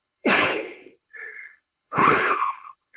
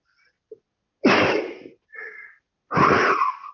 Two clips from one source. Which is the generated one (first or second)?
first